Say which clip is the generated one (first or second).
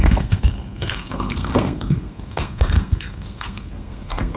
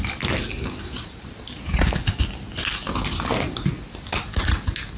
first